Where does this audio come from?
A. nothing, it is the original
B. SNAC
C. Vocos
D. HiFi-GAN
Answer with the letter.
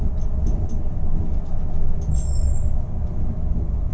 A